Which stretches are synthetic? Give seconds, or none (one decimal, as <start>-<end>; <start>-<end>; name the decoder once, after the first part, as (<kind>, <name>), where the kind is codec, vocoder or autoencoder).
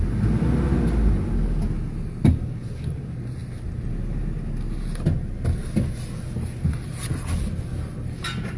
none